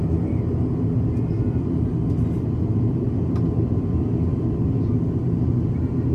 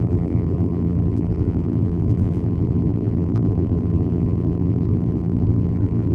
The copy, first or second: second